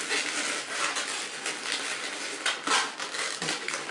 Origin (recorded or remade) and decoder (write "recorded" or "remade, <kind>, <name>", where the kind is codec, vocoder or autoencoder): recorded